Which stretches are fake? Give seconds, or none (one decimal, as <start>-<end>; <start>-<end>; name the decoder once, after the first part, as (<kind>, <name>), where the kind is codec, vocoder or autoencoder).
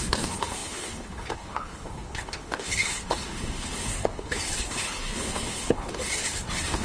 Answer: 0.0-6.8 (codec, HILCodec)